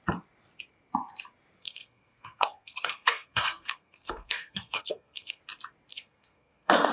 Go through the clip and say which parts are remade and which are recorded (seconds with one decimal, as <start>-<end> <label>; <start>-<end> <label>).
0.0-1.6 recorded; 1.6-5.4 remade; 5.4-5.9 recorded; 5.9-6.9 remade